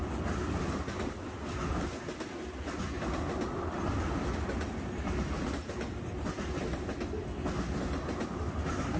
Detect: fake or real real